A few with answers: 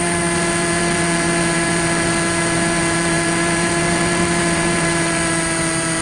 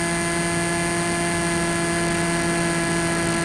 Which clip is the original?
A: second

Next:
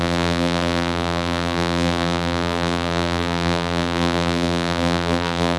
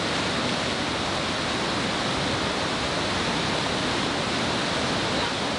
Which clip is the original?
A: second